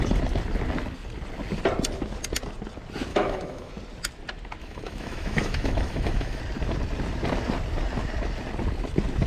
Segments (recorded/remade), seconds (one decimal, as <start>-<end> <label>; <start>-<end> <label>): 0.0-3.1 recorded; 3.1-3.7 remade; 3.7-4.6 recorded; 4.6-6.4 remade; 6.4-9.3 recorded